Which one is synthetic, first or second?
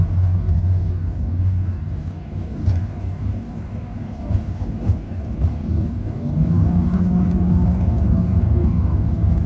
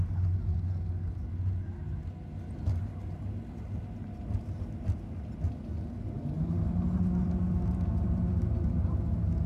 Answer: first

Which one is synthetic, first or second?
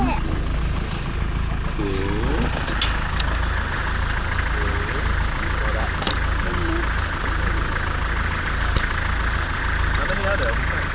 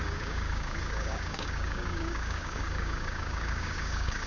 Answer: second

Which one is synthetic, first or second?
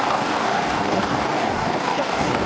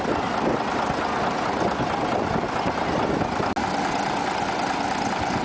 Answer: first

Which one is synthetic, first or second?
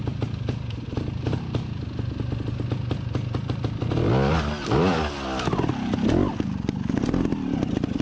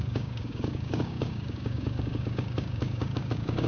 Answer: second